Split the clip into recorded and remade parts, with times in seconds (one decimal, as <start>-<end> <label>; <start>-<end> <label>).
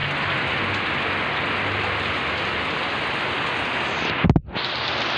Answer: 0.0-5.2 recorded